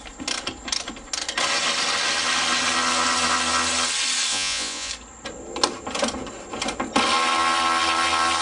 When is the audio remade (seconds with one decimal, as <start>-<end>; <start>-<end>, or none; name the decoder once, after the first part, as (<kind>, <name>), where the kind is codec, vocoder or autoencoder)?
4.3-4.9 (vocoder, Vocos)